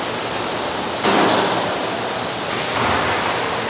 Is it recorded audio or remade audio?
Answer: recorded